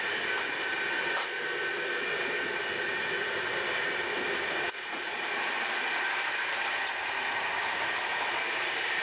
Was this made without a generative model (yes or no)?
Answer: yes